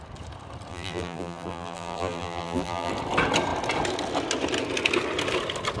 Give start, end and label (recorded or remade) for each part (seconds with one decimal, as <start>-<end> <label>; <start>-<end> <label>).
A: 0.0-0.7 recorded; 0.7-2.9 remade; 2.9-5.8 recorded